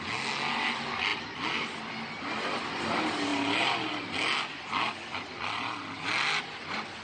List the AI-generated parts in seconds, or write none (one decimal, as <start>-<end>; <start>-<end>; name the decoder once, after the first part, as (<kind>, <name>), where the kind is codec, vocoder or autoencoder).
none

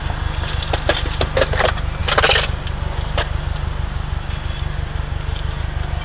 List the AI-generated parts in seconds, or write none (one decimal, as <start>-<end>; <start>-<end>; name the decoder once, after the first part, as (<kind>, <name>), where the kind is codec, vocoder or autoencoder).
none

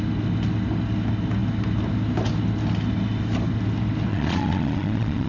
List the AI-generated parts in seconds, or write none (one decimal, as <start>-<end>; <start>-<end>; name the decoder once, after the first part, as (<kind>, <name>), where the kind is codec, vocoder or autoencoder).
4.1-5.3 (vocoder, Vocos)

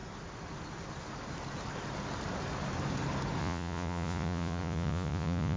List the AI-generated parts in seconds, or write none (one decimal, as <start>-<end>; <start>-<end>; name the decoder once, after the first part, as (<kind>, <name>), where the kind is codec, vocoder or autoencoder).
3.4-5.6 (vocoder, Vocos)

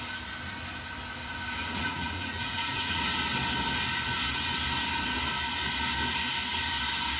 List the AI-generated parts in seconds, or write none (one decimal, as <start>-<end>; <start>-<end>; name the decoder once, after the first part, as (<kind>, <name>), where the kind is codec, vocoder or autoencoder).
1.6-3.0 (vocoder, Vocos)

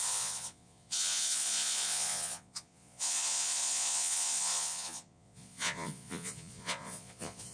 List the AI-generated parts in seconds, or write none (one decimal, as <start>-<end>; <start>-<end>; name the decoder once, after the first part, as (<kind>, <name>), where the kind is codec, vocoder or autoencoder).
0.0-7.5 (vocoder, Vocos)

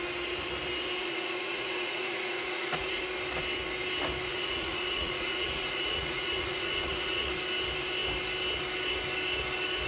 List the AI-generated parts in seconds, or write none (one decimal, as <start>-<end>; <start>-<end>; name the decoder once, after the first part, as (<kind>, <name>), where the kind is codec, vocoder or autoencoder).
1.0-3.0 (vocoder, Vocos); 4.3-7.3

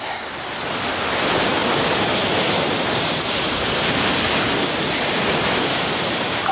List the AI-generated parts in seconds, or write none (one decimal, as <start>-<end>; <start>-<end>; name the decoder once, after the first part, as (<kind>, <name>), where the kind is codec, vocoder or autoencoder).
none